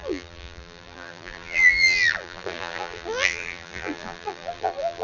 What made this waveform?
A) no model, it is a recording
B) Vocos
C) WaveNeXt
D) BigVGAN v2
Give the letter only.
D